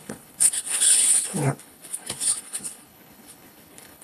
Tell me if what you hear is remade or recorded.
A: remade